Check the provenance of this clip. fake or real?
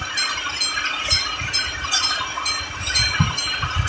real